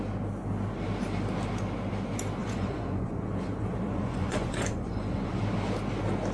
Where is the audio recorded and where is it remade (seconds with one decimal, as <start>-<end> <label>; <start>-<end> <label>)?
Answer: 0.0-2.4 recorded; 2.4-5.4 remade; 5.4-6.3 recorded